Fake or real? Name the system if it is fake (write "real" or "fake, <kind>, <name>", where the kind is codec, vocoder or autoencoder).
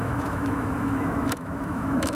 fake, autoencoder, DAC-VAE